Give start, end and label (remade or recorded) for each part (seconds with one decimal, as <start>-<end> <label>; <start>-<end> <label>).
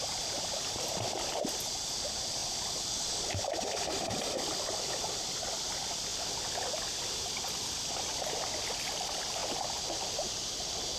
0.0-9.4 recorded; 9.4-10.3 remade; 10.3-11.0 recorded